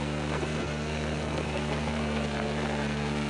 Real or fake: fake